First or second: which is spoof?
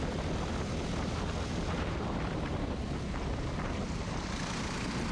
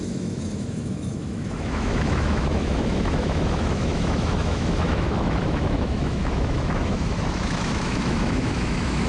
second